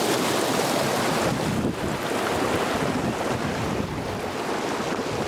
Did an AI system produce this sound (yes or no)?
no